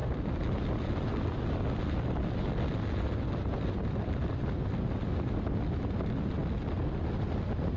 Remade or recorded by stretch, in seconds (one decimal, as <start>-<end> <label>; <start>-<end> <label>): 0.0-7.8 recorded